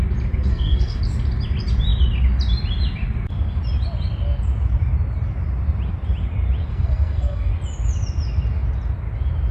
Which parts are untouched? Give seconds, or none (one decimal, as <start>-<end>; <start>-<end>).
0.0-0.5; 1.0-6.7; 7.5-9.5